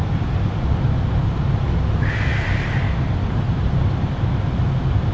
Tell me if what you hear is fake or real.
real